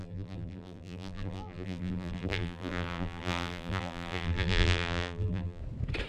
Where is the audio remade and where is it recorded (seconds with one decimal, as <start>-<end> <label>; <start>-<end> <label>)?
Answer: 0.0-5.6 remade; 5.6-6.1 recorded